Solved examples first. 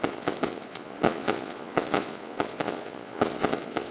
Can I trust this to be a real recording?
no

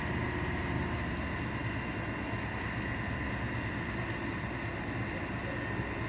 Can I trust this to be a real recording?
yes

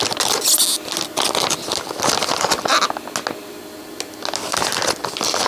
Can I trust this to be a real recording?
yes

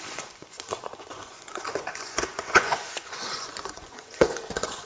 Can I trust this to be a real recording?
no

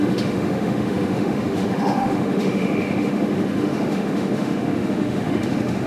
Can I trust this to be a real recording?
no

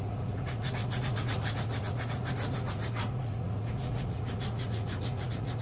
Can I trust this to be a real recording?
no